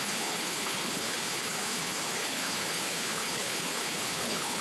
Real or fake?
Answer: fake